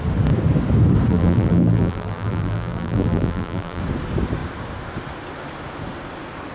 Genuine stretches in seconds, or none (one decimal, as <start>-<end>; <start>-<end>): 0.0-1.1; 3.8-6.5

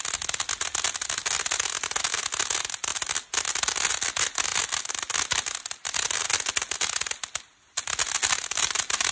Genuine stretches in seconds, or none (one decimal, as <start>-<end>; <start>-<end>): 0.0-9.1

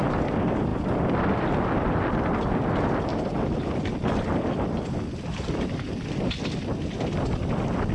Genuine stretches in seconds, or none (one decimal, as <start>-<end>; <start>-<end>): 0.0-7.9